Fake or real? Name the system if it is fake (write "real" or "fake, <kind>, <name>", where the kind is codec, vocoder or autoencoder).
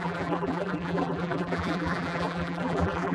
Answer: fake, vocoder, BigVGAN v2